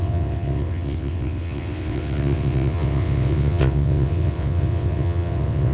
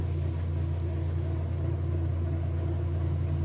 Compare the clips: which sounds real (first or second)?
second